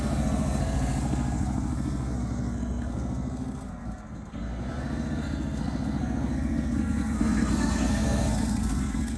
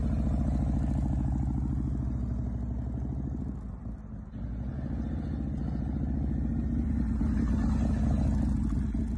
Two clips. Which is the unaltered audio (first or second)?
second